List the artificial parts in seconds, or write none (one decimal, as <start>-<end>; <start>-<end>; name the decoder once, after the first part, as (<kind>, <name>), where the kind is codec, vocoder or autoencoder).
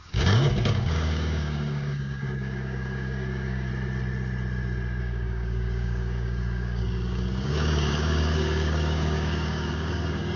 0.0-3.7 (codec, DAC); 5.0-10.4